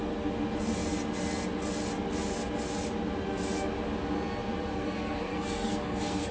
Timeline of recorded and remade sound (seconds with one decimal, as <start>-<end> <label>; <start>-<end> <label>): 0.0-4.7 recorded; 4.7-6.3 remade

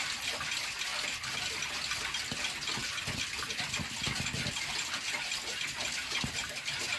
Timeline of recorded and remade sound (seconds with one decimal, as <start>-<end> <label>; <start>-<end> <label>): 0.0-7.0 recorded